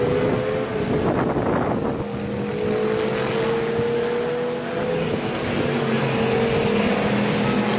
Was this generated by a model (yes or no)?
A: no